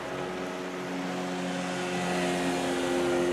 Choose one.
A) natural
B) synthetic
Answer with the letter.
A